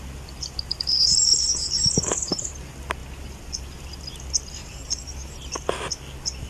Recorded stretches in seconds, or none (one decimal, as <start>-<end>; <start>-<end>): 0.0-0.7; 2.5-4.6; 5.1-6.5